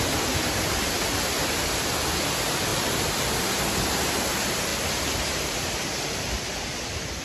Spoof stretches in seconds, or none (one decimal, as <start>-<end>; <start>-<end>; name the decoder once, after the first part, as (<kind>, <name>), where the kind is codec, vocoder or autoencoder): none